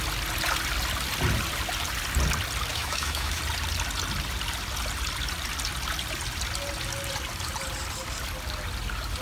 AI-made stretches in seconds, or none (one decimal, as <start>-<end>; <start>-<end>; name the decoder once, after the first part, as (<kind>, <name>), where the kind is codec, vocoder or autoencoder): 2.7-3.4 (autoencoder, DAC-VAE)